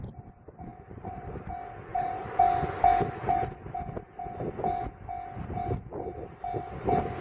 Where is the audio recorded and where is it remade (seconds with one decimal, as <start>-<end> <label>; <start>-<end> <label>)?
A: 0.0-0.7 recorded; 0.7-1.3 remade; 1.3-1.9 recorded; 1.9-2.4 remade; 2.4-7.2 recorded